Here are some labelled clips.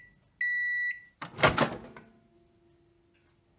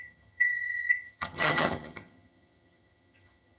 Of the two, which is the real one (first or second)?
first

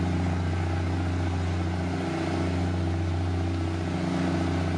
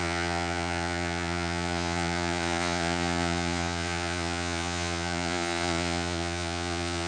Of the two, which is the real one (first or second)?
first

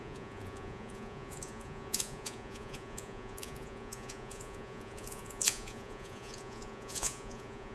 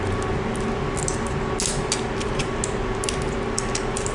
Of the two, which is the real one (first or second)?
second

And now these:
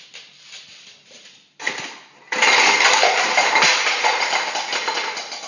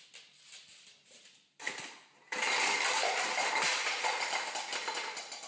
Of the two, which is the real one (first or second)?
first